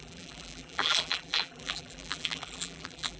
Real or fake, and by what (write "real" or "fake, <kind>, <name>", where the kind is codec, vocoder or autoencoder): fake, vocoder, BigVGAN v2